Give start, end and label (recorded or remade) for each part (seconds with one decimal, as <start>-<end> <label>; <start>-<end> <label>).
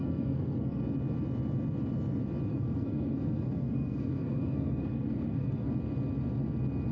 0.0-0.8 remade; 0.8-2.5 recorded; 2.5-5.7 remade; 5.7-6.9 recorded